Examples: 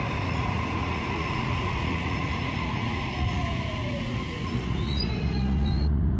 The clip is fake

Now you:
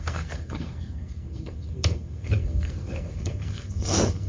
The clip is fake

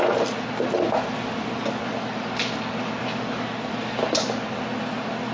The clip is real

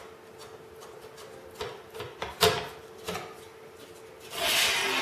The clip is real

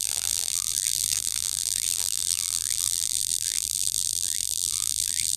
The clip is fake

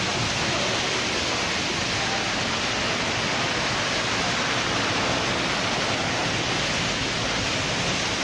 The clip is real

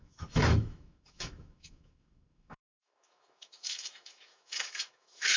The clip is fake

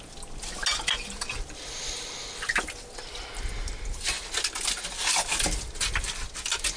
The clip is real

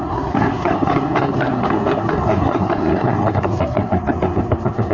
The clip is fake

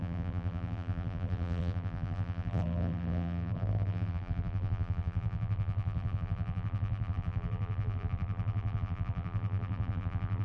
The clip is fake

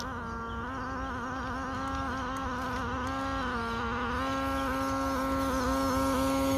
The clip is real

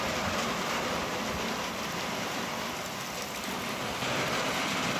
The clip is fake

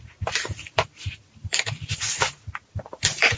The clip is fake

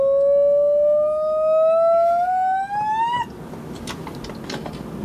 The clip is real